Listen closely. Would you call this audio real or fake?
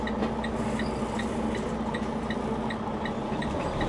real